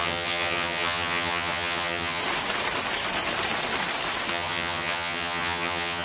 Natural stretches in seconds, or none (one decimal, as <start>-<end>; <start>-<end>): 2.2-4.3